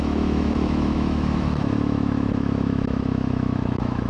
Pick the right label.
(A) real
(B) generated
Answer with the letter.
B